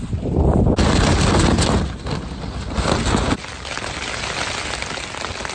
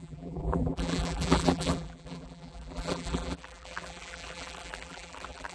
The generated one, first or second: second